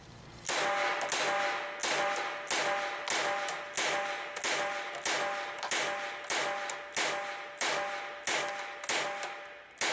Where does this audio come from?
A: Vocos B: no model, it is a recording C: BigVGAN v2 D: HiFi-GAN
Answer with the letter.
B